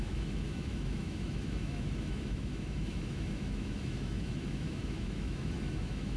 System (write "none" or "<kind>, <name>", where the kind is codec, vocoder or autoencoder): autoencoder, DAC-VAE